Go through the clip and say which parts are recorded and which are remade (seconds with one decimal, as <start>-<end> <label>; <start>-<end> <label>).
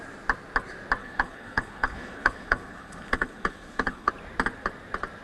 0.0-1.0 recorded; 1.0-4.1 remade; 4.1-5.2 recorded